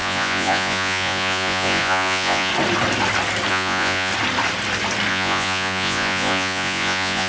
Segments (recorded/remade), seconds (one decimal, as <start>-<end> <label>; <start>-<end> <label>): 0.0-2.5 remade; 2.5-3.5 recorded; 3.5-4.1 remade; 4.1-5.1 recorded; 5.1-7.3 remade